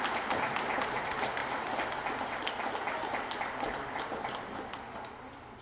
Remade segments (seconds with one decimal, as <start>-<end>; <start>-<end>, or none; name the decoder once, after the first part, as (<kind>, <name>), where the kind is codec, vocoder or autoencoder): none